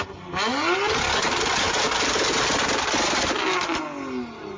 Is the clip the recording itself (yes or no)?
yes